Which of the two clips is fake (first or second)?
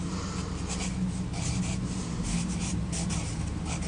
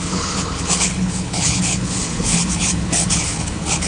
second